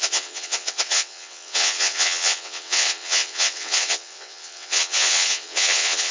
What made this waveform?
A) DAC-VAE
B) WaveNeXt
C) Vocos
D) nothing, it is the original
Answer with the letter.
B